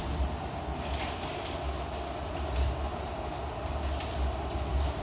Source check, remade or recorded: recorded